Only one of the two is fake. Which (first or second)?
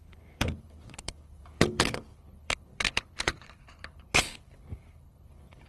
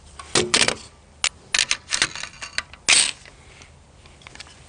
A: first